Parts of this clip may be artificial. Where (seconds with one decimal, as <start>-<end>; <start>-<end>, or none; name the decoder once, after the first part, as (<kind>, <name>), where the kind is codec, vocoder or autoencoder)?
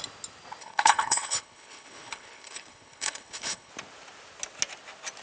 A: 0.6-3.7 (codec, HILCodec)